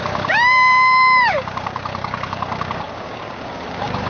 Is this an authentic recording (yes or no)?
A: no